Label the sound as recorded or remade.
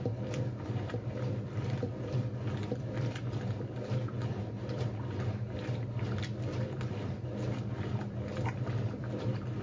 remade